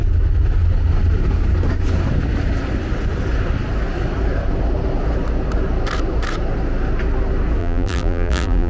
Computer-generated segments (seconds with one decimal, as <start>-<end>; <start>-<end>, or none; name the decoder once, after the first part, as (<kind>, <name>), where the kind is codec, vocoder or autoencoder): 7.6-8.7 (vocoder, BigVGAN v2)